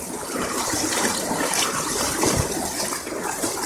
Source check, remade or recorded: recorded